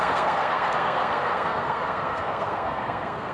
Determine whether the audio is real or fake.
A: fake